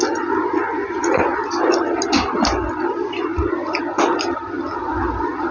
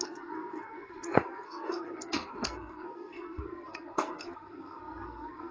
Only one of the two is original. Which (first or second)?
first